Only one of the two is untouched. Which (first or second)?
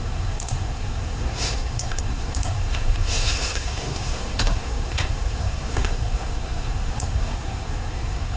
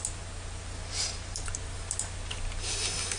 second